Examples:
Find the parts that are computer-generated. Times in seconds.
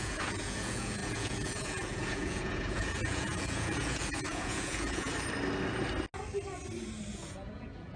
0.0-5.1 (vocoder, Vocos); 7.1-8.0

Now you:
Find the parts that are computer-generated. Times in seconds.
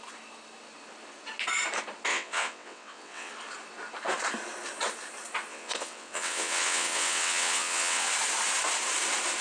2.1-3.3 (vocoder, WaveNeXt); 5.5-8.1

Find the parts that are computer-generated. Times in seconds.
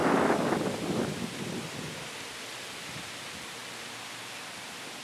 2.7-3.6 (vocoder, BigVGAN v2); 4.3-5.0